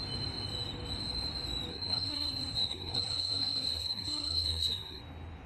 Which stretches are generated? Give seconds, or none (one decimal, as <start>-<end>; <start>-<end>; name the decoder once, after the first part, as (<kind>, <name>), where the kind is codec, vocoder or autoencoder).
1.7-5.0 (codec, SNAC)